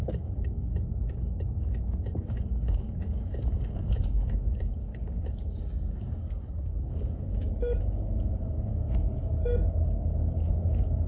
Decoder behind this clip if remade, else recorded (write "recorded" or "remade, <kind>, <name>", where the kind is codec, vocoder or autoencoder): remade, codec, DAC